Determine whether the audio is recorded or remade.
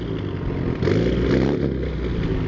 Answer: recorded